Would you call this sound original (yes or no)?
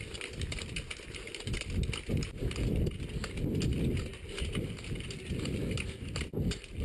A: yes